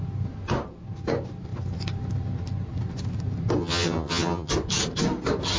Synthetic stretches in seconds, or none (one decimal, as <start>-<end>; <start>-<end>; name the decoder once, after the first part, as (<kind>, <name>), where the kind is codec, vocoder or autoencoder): 3.6-4.5 (vocoder, HiFi-GAN)